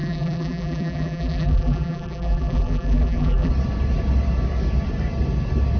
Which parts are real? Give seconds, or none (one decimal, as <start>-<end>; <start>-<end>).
3.5-5.8